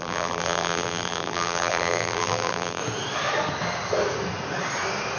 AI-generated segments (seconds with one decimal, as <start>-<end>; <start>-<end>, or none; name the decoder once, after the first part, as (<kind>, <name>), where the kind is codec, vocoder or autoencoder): 0.0-2.8 (vocoder, BigVGAN v2)